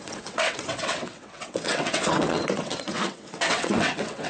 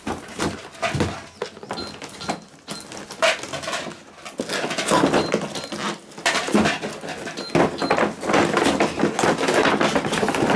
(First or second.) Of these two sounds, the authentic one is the second